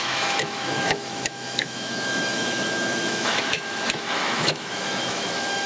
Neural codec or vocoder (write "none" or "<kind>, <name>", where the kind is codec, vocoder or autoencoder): autoencoder, DAC-VAE